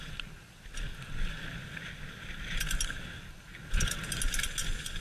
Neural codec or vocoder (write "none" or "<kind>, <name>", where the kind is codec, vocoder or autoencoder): none